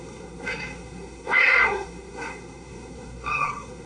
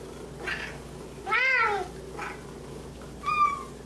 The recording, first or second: second